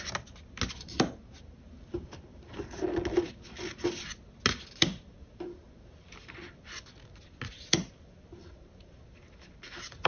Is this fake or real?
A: real